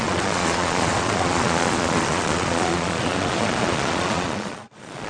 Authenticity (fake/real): fake